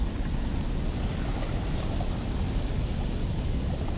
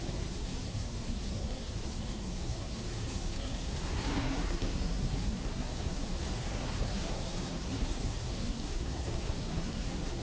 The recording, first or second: first